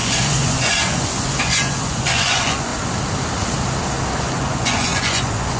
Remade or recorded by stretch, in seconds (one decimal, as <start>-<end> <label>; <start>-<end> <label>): 0.0-2.7 remade; 2.7-4.2 recorded; 4.2-5.6 remade